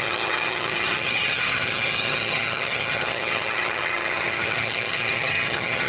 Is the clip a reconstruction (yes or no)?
yes